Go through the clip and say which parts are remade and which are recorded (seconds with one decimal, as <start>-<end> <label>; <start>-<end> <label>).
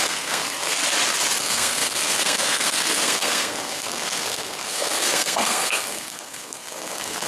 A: 0.0-0.8 remade; 0.8-1.4 recorded; 1.4-7.3 remade